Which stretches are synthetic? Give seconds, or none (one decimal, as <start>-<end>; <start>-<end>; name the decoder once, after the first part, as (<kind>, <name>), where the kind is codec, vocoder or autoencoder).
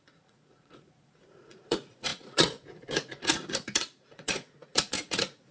0.0-5.5 (vocoder, Vocos)